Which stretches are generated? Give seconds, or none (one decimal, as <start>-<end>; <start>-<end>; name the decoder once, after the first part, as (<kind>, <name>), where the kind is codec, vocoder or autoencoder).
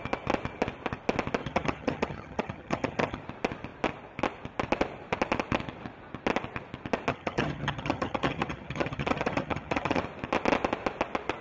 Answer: 1.4-3.2 (vocoder, HiFi-GAN); 7.1-10.0